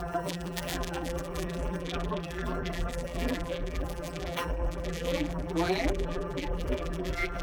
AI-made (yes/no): yes